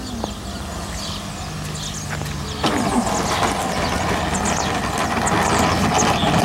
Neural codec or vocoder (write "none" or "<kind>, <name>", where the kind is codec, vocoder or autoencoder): none